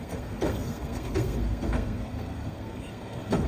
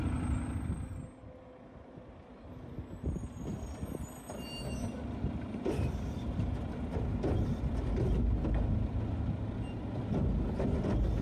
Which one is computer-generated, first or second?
first